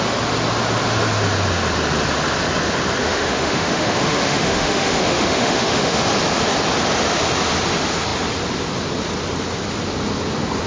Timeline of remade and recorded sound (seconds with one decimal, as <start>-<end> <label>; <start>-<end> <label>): 0.0-3.0 recorded; 3.0-6.0 remade; 6.0-10.7 recorded